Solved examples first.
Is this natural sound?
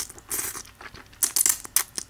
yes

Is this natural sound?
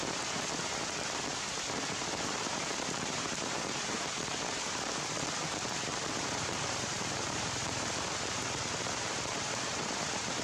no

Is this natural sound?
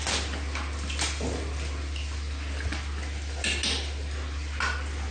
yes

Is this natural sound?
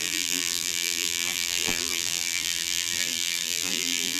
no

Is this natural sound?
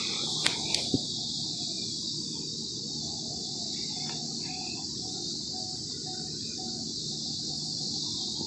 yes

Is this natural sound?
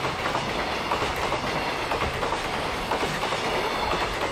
yes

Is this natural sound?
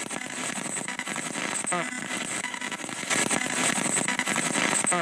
yes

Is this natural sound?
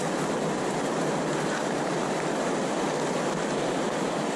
yes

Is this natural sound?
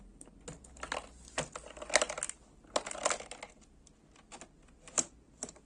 yes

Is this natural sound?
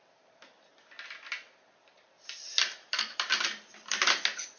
yes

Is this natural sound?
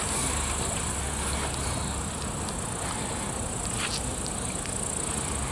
yes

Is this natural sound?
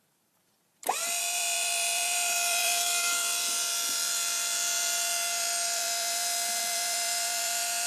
no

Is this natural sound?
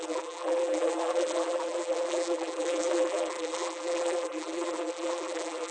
no